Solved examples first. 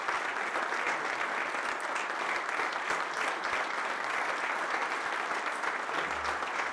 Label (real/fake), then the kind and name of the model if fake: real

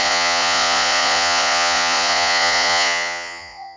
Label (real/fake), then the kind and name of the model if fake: fake, vocoder, Vocos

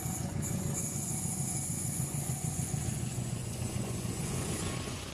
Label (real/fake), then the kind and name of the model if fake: fake, vocoder, Vocos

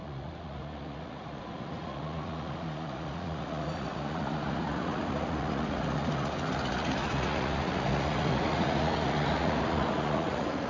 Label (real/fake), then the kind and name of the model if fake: fake, vocoder, Vocos